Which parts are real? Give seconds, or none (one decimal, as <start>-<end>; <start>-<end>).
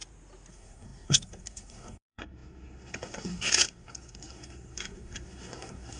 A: 0.0-0.5